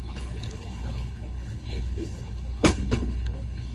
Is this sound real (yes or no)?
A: no